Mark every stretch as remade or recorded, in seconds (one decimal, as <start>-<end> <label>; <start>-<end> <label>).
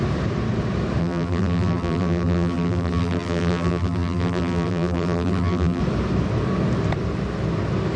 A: 0.0-1.0 recorded; 1.0-5.8 remade; 5.8-8.0 recorded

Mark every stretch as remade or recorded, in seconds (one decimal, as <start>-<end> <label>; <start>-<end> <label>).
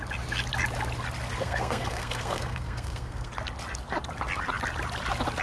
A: 0.0-1.4 recorded; 1.4-3.3 remade; 3.3-5.4 recorded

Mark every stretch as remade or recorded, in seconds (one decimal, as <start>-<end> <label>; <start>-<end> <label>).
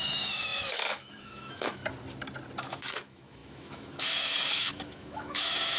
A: 0.0-1.8 remade; 1.8-2.6 recorded; 2.6-5.8 remade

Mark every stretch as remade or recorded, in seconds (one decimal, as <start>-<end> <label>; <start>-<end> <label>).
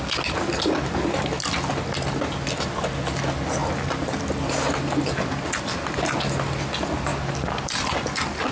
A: 0.0-8.5 recorded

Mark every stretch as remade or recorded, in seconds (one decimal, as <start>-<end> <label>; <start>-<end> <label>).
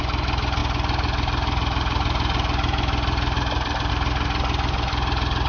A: 0.0-5.5 recorded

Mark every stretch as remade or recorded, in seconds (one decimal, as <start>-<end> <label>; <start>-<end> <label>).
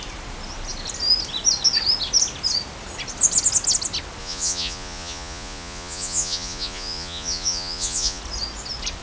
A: 0.0-4.2 recorded; 4.2-8.2 remade; 8.2-9.0 recorded